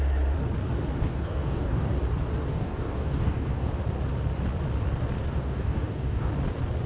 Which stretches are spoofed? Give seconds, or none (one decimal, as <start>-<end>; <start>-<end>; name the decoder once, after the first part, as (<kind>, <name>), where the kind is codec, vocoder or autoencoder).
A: 1.1-1.9 (codec, DAC); 2.5-3.7; 5.4-6.3

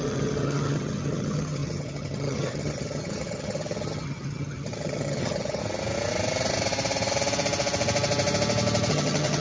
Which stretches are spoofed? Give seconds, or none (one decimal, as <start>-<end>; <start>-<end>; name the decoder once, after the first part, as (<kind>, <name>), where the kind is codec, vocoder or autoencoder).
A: 0.0-5.6 (vocoder, HiFi-GAN); 8.9-9.4

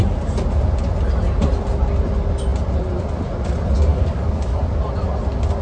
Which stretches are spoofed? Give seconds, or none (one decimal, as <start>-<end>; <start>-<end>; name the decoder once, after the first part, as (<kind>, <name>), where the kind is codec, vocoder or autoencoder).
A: 3.9-4.6 (codec, DAC)

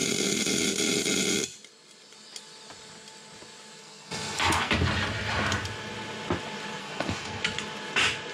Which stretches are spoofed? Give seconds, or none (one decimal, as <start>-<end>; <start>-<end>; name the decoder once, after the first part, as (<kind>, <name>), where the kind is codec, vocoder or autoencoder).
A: 3.8-4.7 (codec, SNAC); 6.8-7.4

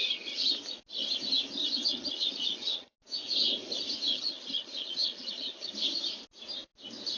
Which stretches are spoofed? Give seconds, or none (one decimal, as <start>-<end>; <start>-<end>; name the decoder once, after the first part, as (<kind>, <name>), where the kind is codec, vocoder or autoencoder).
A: 0.0-0.5 (vocoder, HiFi-GAN); 1.6-2.9; 4.1-5.7

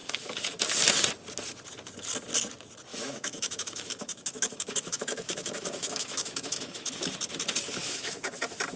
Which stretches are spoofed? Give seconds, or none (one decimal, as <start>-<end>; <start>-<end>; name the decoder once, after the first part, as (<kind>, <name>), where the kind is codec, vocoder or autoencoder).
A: 2.9-6.9 (autoencoder, DAC-VAE); 7.8-8.4